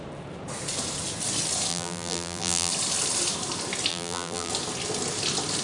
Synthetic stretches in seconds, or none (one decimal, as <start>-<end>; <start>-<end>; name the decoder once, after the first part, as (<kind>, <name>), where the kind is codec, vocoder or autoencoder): 1.7-2.7 (vocoder, BigVGAN v2); 3.9-4.5